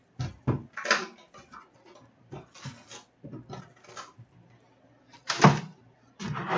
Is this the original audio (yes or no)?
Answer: yes